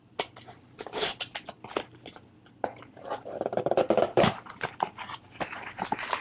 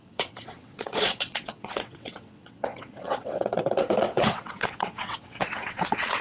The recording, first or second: first